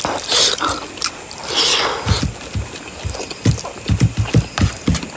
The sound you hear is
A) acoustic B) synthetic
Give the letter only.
A